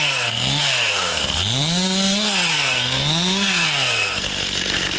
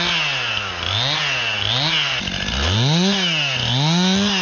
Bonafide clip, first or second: second